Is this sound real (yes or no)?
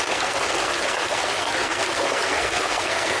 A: no